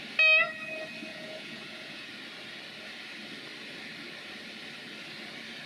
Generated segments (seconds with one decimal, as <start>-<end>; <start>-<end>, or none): 1.1-2.1